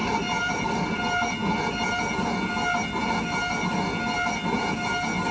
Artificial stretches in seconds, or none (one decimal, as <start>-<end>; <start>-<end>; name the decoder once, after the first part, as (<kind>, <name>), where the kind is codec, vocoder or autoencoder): 0.0-1.0 (vocoder, BigVGAN v2)